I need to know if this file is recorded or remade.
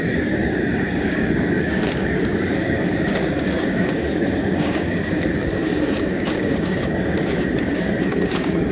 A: remade